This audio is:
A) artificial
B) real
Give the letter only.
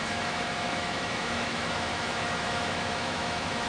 A